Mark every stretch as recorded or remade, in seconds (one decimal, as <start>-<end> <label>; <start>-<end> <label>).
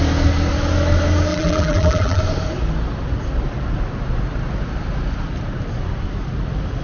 0.0-1.3 recorded; 1.3-2.2 remade; 2.2-6.8 recorded